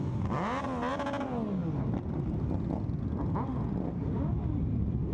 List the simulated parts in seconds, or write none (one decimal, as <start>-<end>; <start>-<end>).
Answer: none